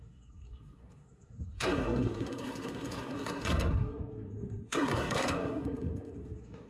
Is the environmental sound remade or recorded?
remade